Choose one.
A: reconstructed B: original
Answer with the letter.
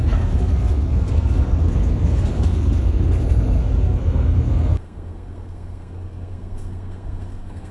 A